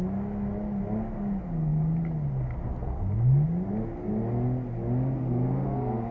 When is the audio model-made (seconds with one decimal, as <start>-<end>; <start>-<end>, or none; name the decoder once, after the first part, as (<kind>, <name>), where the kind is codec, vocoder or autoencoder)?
none